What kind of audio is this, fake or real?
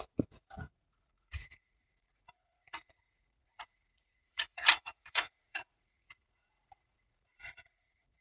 fake